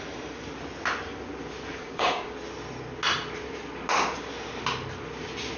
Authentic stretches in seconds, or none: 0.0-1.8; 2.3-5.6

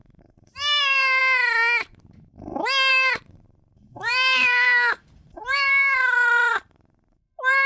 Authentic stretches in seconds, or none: 1.2-2.9

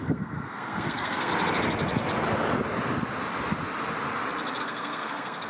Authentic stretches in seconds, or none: 1.3-4.6

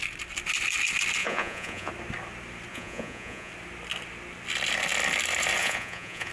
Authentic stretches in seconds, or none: 0.0-1.2; 1.9-2.7; 3.5-5.6

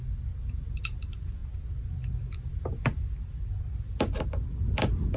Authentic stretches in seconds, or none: 0.0-1.4; 2.5-5.2

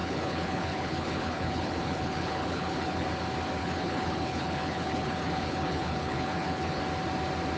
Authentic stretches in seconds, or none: 3.1-3.6; 6.8-7.6

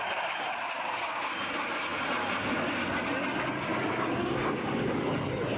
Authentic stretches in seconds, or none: 0.0-3.7; 4.9-5.6

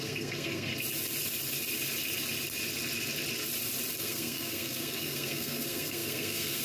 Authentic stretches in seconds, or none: 0.7-4.0